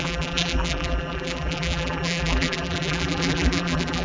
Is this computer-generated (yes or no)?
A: yes